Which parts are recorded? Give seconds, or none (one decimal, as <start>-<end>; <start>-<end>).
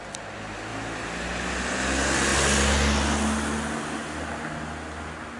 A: 0.0-5.4